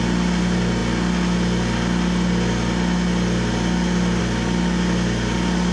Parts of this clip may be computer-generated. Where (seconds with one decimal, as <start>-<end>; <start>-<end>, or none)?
none